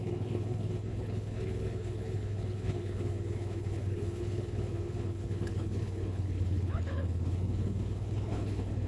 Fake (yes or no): yes